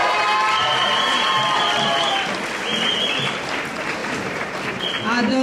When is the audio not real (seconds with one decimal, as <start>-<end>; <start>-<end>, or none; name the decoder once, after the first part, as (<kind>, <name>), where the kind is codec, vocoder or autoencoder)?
0.0-1.7 (vocoder, BigVGAN v2); 4.0-4.9